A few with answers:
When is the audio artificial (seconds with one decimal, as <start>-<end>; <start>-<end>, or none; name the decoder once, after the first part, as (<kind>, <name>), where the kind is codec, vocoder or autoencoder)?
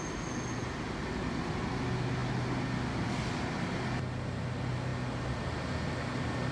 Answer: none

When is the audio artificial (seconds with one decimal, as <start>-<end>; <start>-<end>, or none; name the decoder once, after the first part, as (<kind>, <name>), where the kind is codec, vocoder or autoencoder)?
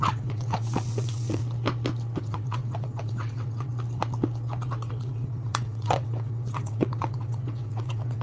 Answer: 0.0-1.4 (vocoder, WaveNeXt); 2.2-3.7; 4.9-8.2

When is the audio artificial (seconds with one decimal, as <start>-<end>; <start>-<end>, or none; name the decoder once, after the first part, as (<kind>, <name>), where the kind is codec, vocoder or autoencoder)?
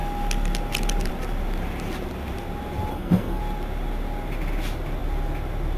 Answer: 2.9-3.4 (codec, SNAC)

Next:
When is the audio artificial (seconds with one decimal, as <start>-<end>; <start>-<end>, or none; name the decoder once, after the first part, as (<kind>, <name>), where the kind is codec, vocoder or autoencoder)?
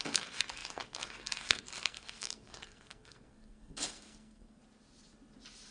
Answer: 0.0-4.6 (codec, SNAC)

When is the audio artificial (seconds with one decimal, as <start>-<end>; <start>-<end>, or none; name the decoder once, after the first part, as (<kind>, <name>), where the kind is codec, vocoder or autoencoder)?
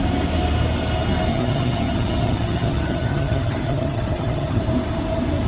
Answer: 1.3-4.6 (vocoder, HiFi-GAN)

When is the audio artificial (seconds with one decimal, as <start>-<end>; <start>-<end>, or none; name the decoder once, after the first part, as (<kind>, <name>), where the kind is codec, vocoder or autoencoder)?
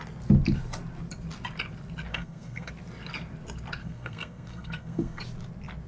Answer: 2.1-2.7 (codec, SNAC); 3.8-5.2